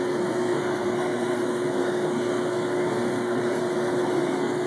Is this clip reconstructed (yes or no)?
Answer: yes